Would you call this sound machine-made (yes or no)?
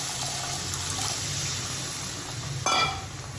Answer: no